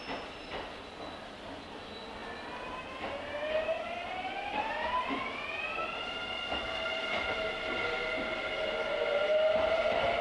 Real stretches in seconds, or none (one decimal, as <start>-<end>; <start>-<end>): 0.0-10.2

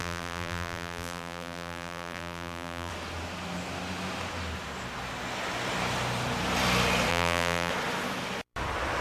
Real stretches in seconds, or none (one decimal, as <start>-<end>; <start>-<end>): 2.9-7.1; 7.7-9.0